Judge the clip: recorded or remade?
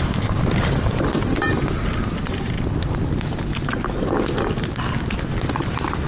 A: recorded